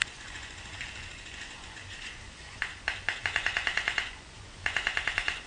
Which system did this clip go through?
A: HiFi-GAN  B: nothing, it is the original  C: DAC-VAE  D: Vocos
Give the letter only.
D